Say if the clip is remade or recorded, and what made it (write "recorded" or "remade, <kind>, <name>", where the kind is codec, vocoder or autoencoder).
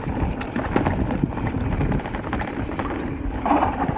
recorded